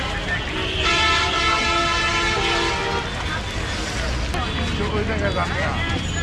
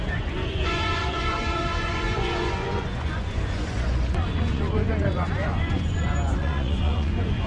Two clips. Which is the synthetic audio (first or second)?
second